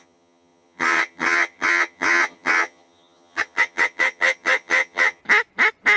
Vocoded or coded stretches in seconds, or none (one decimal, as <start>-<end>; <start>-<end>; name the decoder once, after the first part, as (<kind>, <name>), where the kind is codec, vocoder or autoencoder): 0.0-5.2 (vocoder, HiFi-GAN)